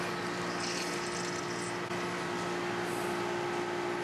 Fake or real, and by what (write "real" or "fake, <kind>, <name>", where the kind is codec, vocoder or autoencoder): real